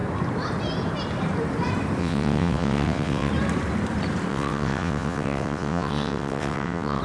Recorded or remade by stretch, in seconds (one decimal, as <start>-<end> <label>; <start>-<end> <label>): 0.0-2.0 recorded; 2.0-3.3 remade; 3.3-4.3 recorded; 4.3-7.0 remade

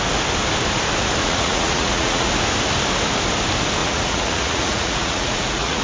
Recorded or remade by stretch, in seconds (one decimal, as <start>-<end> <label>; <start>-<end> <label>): 0.0-1.2 recorded; 1.2-2.3 remade; 2.3-3.8 recorded; 3.8-5.8 remade

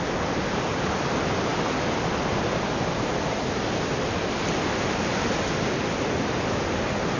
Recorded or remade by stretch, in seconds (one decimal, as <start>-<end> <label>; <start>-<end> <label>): 0.0-7.2 recorded

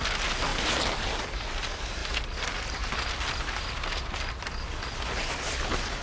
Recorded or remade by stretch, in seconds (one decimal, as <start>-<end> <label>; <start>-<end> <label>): 0.0-6.0 recorded

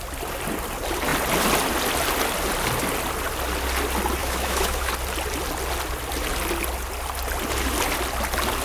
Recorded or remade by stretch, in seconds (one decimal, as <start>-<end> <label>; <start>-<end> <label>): 0.0-4.2 recorded; 4.2-4.9 remade; 4.9-8.6 recorded

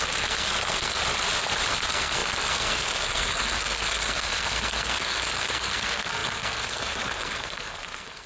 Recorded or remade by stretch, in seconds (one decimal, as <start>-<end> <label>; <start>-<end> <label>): 0.0-1.0 remade; 1.0-1.7 recorded; 1.7-8.3 remade